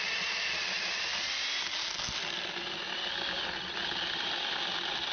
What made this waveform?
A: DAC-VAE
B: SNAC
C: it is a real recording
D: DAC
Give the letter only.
C